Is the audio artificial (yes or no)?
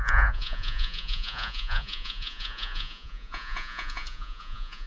yes